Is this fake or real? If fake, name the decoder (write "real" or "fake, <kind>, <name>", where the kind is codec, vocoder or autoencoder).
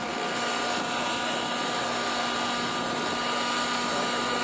real